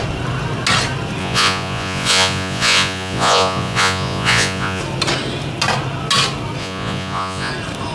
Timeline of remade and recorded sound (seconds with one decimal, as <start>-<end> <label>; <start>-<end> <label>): 0.0-1.2 recorded; 1.2-4.8 remade; 4.8-6.6 recorded; 6.6-7.5 remade; 7.5-7.9 recorded